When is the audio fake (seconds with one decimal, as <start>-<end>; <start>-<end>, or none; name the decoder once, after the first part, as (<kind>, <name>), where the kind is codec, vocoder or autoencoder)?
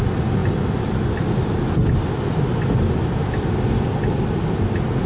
none